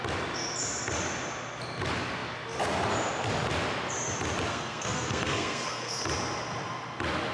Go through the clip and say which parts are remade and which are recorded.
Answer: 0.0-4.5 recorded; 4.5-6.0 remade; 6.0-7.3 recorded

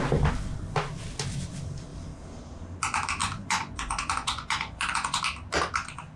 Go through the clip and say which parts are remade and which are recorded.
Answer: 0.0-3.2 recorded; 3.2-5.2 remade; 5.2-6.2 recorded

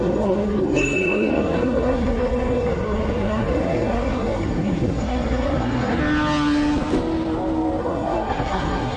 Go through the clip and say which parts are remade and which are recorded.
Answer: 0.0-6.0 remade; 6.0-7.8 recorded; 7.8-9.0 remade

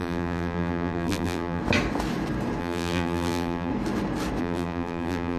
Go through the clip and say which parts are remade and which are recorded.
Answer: 0.0-1.6 remade; 1.6-2.6 recorded; 2.6-3.7 remade; 3.7-4.4 recorded; 4.4-5.4 remade

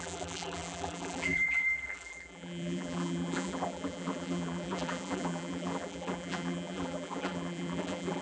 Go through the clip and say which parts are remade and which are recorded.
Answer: 0.0-8.2 remade